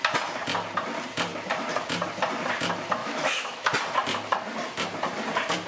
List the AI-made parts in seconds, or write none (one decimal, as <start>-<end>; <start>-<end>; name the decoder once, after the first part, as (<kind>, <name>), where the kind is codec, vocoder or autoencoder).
3.0-3.7 (autoencoder, DAC-VAE)